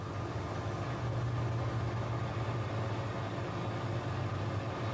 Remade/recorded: recorded